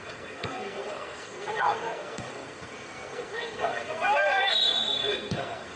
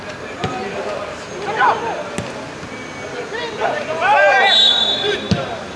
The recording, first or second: second